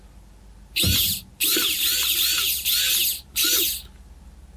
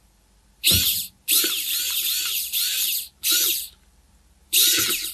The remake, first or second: second